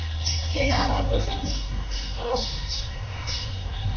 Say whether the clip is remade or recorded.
remade